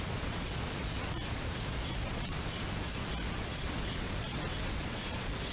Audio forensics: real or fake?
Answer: fake